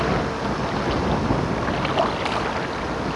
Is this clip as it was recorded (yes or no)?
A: yes